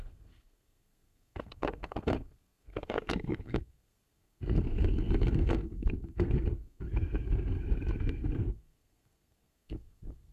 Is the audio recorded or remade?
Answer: remade